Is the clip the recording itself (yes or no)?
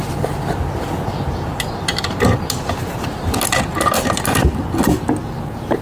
yes